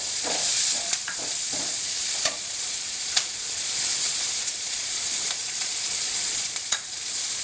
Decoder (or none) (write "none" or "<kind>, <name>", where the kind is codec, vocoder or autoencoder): vocoder, Vocos